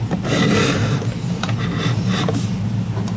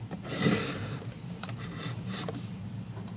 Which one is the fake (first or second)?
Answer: second